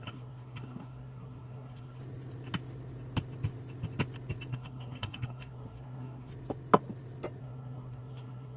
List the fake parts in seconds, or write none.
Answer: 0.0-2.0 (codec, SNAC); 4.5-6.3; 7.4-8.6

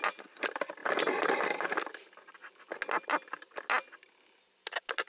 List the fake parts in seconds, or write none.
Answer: none

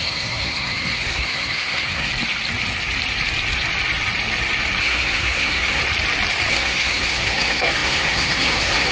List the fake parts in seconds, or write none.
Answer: 0.0-2.1 (codec, SNAC); 4.8-5.8; 6.5-8.9

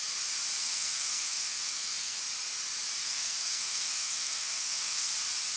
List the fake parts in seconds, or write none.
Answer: 0.6-2.2 (codec, SNAC); 3.0-5.1

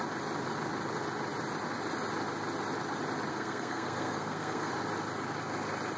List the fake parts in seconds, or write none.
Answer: 3.3-4.7 (codec, SNAC)

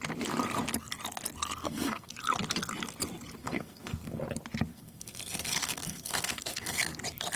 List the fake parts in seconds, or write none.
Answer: 1.6-2.1 (codec, SNAC); 3.4-4.2; 4.7-6.8

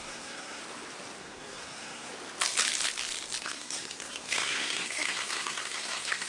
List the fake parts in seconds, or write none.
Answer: 0.0-0.6 (codec, SNAC); 1.2-2.1; 3.4-6.3